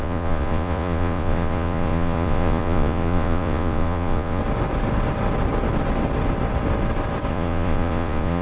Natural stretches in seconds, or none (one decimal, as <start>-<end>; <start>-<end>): 4.4-7.3